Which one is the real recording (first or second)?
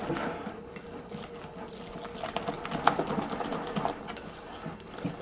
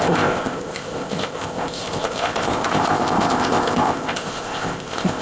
first